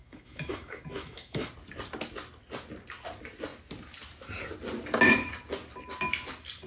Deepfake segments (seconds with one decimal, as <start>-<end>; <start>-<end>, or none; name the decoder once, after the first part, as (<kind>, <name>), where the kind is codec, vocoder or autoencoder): 0.0-1.5 (autoencoder, DAC-VAE)